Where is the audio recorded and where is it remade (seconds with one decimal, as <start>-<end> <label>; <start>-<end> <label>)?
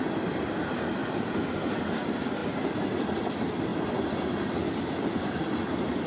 0.0-1.0 recorded; 1.0-2.0 remade; 2.0-6.1 recorded